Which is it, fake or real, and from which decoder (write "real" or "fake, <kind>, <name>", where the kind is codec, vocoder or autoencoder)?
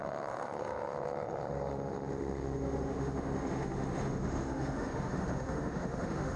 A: fake, autoencoder, DAC-VAE